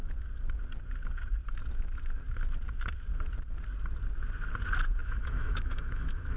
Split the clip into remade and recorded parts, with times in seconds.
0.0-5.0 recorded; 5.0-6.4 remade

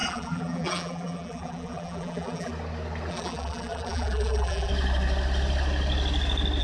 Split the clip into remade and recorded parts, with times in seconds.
0.0-2.5 remade; 2.5-3.1 recorded; 3.1-4.7 remade; 4.7-6.6 recorded

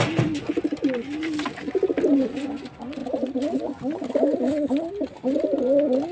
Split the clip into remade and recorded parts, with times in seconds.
0.0-6.1 recorded

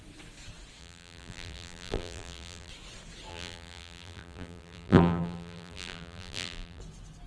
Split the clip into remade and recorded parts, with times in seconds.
0.0-0.8 recorded; 0.8-2.7 remade; 2.7-3.3 recorded; 3.3-6.8 remade; 6.8-7.3 recorded

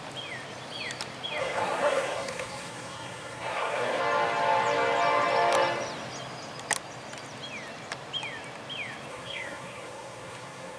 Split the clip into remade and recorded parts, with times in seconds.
0.0-1.4 recorded; 1.4-4.0 remade; 4.0-9.1 recorded; 9.1-10.8 remade

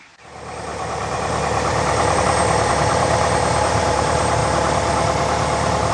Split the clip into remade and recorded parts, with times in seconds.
0.0-4.4 remade; 4.4-5.9 recorded

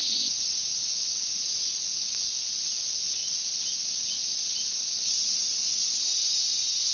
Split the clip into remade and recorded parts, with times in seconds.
0.0-2.3 remade; 2.3-6.9 recorded

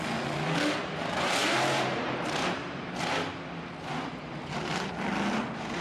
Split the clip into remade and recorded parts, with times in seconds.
0.0-1.4 recorded; 1.4-3.1 remade; 3.1-5.8 recorded